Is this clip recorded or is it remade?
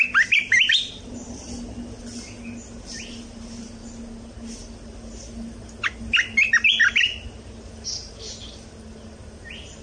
recorded